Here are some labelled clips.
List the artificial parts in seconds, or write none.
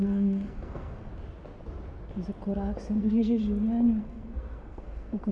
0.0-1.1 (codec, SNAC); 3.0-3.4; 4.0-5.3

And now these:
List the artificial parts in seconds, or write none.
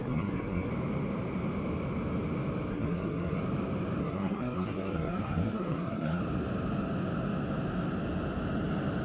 0.0-0.7 (codec, SNAC); 2.7-3.4; 4.0-6.2